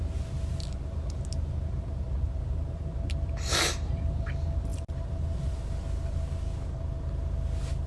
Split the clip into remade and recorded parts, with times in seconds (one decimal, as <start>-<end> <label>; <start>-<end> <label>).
0.0-7.9 recorded